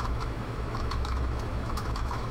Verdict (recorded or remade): remade